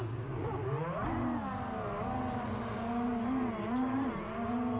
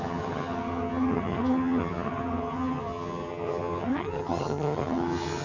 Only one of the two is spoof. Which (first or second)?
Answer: second